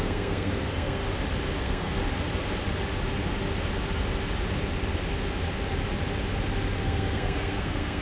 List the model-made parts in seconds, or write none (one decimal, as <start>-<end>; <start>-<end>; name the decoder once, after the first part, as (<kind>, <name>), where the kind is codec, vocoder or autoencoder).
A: 0.0-1.0 (codec, SNAC); 1.6-2.0; 6.8-8.0